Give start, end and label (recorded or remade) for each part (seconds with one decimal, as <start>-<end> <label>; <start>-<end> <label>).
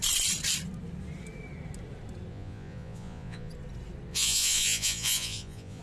0.0-2.3 recorded; 2.3-3.5 remade; 3.5-4.1 recorded; 4.1-5.8 remade